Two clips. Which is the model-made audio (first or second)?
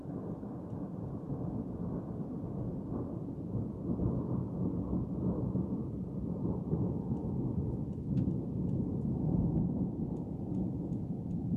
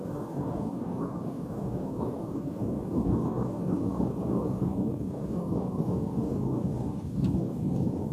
second